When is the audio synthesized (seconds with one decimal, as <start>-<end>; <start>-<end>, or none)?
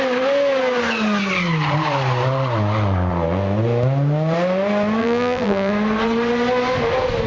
5.0-5.7